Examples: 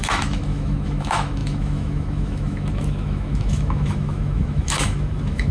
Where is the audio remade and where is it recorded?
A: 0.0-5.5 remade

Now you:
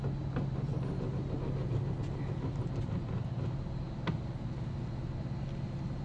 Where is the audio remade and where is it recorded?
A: 0.0-6.0 recorded

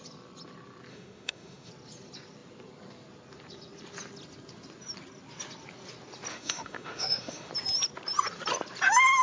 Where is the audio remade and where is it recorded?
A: 0.0-0.9 recorded; 0.9-1.7 remade; 1.7-6.3 recorded; 6.3-7.5 remade; 7.5-9.2 recorded

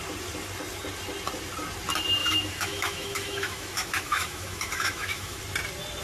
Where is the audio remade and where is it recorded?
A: 0.0-2.2 recorded; 2.2-5.4 remade; 5.4-6.0 recorded

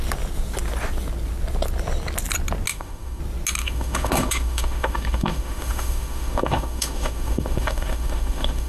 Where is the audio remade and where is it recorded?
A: 0.0-2.7 recorded; 2.7-3.2 remade; 3.2-3.6 recorded; 3.6-8.7 remade